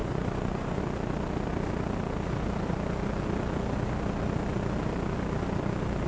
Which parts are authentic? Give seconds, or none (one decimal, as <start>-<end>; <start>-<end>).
0.8-6.1